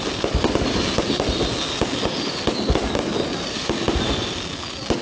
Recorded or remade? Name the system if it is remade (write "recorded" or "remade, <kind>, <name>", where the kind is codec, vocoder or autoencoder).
recorded